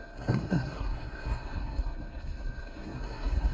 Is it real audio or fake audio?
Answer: fake